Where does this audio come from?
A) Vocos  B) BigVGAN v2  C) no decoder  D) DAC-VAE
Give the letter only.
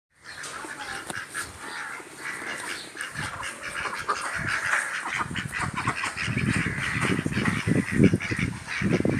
C